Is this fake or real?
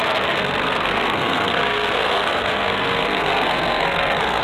fake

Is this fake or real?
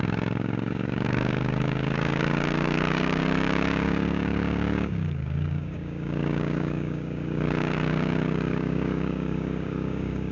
fake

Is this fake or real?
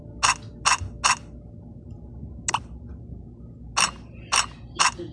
real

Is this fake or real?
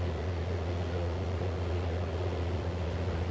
fake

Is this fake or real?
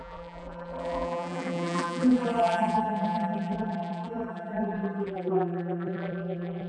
fake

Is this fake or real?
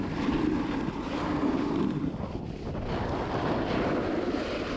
real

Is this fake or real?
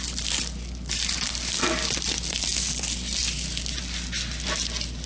real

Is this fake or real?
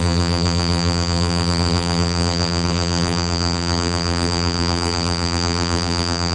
fake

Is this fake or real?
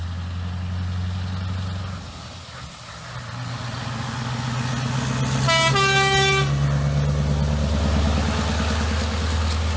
real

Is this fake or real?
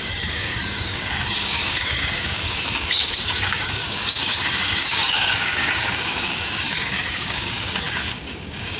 fake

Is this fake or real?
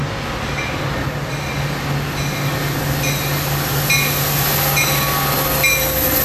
real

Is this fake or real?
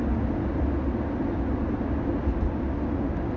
real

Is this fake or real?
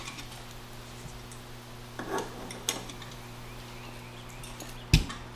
real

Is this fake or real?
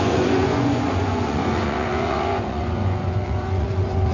fake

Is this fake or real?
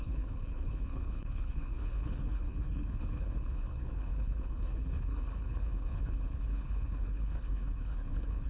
fake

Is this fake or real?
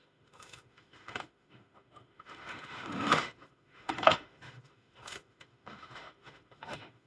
fake